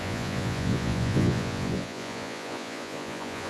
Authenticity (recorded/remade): remade